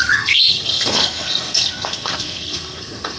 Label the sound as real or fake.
fake